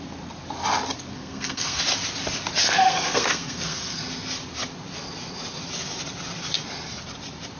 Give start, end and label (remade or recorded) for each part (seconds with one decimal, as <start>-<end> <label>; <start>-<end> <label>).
0.0-1.1 recorded; 1.1-1.8 remade; 1.8-2.6 recorded; 2.6-4.0 remade; 4.0-7.6 recorded